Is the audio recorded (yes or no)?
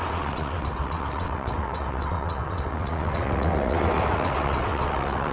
no